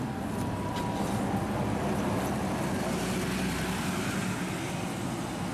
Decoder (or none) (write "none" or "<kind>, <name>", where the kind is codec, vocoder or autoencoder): none